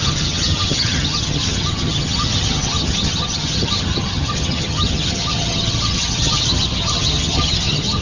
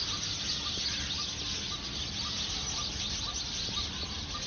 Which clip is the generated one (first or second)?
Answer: first